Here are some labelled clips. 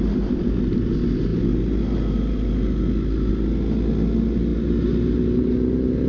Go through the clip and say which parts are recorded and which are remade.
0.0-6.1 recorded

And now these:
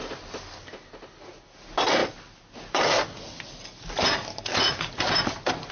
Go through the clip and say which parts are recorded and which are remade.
0.0-5.7 recorded

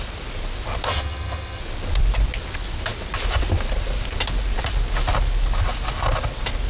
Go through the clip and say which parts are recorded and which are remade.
0.0-0.9 recorded; 0.9-1.6 remade; 1.6-6.7 recorded

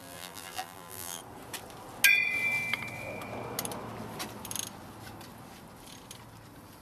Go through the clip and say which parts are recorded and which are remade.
0.0-1.2 remade; 1.2-6.8 recorded

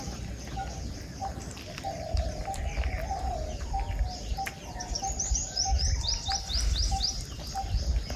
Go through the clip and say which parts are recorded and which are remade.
0.0-8.2 recorded

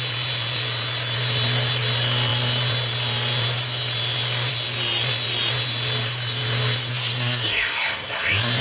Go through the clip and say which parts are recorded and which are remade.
0.0-6.9 recorded; 6.9-8.6 remade

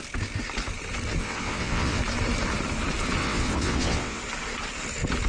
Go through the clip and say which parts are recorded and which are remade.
0.0-1.2 recorded; 1.2-2.0 remade; 2.0-3.2 recorded; 3.2-4.2 remade; 4.2-5.3 recorded